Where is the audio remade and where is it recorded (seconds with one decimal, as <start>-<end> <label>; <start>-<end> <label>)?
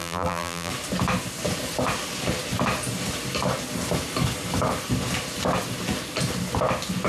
0.0-0.7 remade; 0.7-7.1 recorded